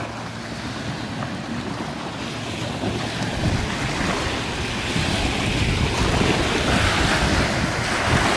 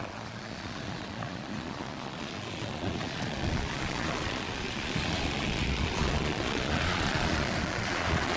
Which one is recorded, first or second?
first